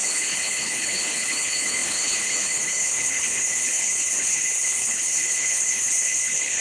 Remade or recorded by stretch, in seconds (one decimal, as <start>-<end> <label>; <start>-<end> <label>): 0.0-6.6 remade